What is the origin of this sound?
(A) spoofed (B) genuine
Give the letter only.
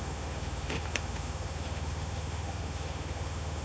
A